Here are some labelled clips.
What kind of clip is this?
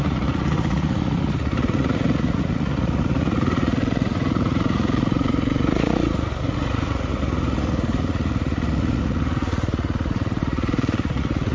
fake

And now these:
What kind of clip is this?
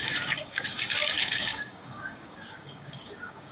fake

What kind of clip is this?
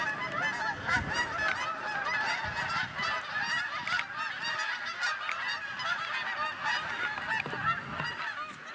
real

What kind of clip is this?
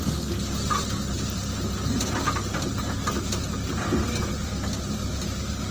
real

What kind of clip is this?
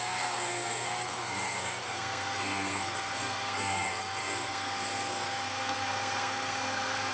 fake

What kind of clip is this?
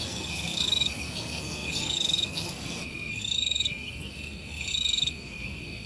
fake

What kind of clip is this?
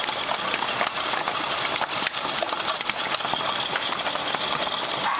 real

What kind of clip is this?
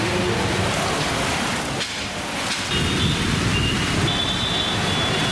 real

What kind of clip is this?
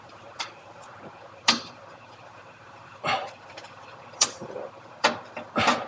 fake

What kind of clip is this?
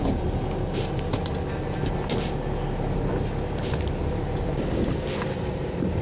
real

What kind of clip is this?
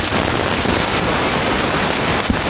real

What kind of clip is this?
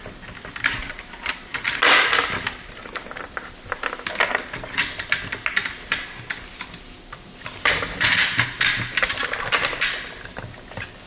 real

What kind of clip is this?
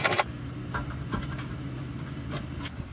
fake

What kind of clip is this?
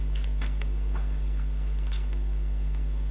fake